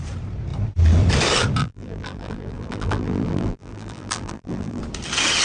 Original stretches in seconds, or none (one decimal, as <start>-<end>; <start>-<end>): 0.0-1.6; 4.8-5.4